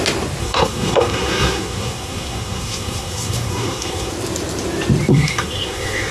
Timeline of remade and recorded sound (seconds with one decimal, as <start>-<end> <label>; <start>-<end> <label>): 0.0-0.4 recorded; 0.4-4.1 remade; 4.1-5.1 recorded; 5.1-6.1 remade